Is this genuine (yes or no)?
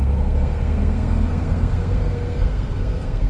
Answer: no